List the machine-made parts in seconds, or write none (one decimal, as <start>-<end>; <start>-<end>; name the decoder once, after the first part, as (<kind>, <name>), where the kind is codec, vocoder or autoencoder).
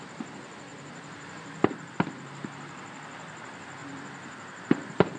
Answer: 0.7-1.9 (vocoder, BigVGAN v2); 3.8-5.2